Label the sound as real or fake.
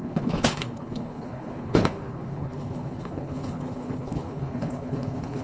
fake